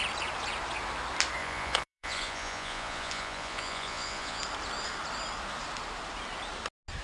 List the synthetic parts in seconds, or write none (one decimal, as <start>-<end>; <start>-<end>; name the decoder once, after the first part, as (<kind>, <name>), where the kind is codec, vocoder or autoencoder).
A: 1.4-4.4 (vocoder, Vocos)

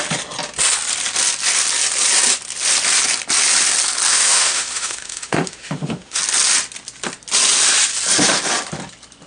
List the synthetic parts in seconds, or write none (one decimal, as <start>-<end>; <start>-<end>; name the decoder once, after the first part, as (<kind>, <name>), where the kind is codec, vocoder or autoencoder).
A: 4.1-6.2 (autoencoder, DAC-VAE)

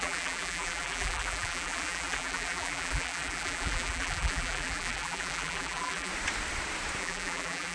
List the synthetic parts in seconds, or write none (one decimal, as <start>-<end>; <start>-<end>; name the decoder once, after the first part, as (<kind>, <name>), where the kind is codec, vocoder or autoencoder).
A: 0.0-6.1 (vocoder, BigVGAN v2); 7.0-7.7

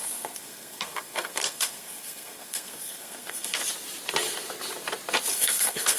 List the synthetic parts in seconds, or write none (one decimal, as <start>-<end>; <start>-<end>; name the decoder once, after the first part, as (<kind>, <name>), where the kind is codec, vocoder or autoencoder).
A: 0.0-3.6 (codec, SNAC); 5.3-6.0

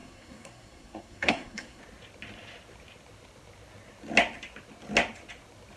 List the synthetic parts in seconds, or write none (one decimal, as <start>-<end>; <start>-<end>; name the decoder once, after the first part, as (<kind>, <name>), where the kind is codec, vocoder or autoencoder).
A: 0.0-1.8 (codec, SNAC)

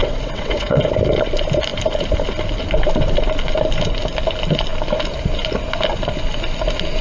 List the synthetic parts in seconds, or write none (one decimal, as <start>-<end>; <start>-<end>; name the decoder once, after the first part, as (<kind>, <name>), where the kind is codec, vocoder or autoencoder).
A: 0.0-0.8 (vocoder, WaveNeXt)

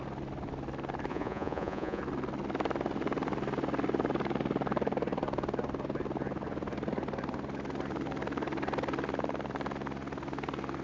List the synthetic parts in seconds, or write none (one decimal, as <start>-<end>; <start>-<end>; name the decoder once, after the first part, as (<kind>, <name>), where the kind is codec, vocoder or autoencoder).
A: 1.1-2.0 (vocoder, Vocos)